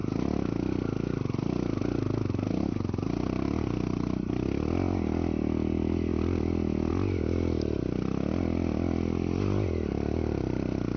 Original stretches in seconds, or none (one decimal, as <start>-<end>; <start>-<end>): 0.0-11.0